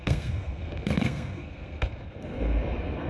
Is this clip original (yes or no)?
no